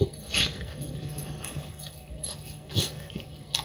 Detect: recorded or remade remade